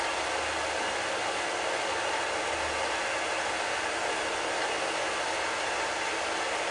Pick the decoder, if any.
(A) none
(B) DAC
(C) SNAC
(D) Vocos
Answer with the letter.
A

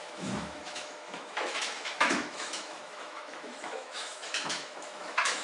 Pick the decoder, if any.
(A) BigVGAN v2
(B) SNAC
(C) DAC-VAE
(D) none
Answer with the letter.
C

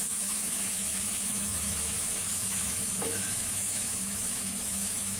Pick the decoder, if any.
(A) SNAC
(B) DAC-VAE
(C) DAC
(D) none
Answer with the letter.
B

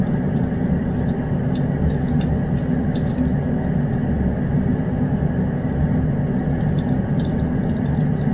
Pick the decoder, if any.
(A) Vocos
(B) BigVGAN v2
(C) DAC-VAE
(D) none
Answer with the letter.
D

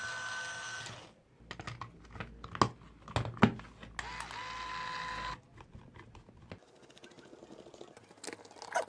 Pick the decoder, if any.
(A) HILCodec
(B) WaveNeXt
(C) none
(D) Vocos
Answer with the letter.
C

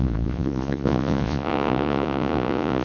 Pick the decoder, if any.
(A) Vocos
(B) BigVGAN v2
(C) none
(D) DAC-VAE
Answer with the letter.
A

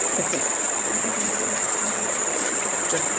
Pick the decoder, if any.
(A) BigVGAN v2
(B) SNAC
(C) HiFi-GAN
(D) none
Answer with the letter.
C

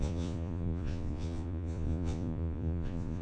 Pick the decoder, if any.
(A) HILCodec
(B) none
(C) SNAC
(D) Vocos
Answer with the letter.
D